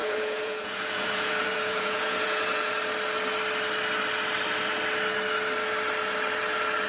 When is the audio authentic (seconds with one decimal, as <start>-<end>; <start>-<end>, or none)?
2.7-6.9